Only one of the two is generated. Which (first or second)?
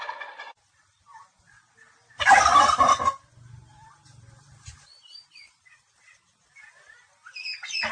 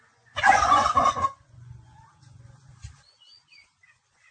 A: second